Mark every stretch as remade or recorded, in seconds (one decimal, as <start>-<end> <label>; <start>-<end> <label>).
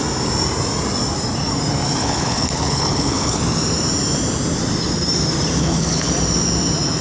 0.0-2.0 recorded; 2.0-3.4 remade; 3.4-5.6 recorded; 5.6-6.1 remade; 6.1-7.0 recorded